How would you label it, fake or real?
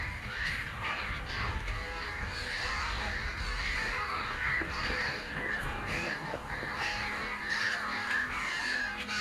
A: fake